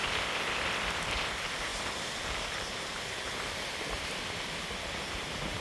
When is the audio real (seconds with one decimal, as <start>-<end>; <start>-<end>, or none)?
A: 0.0-0.9